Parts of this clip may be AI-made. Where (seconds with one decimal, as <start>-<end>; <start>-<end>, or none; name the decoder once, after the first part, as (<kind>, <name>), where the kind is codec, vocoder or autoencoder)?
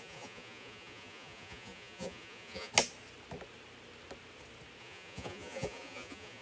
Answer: 0.0-2.7 (vocoder, Vocos); 4.8-6.4